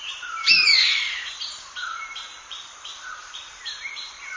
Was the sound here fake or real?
fake